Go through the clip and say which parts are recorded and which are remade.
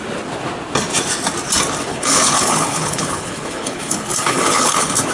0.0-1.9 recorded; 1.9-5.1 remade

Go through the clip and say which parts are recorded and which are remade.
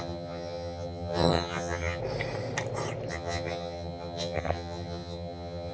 0.0-2.0 remade; 2.0-3.1 recorded; 3.1-5.7 remade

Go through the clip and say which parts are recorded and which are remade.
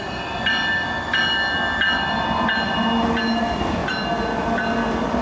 0.0-5.2 recorded